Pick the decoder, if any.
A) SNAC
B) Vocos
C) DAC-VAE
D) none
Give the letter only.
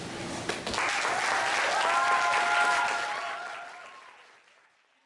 D